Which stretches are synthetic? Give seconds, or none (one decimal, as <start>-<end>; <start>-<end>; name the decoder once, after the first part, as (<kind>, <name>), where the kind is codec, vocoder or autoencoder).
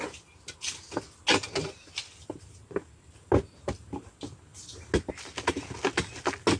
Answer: none